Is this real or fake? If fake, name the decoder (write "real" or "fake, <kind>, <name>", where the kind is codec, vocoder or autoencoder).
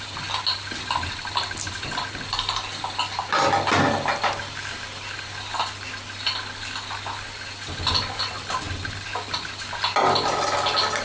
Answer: real